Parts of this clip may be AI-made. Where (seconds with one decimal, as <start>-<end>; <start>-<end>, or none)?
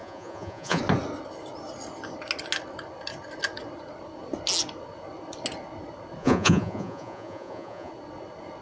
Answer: 0.0-0.8; 6.2-7.9